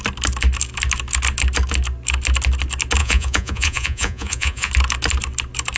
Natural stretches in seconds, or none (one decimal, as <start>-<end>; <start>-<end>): 0.0-3.0; 4.7-5.8